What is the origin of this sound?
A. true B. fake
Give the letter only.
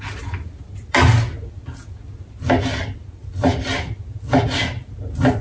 A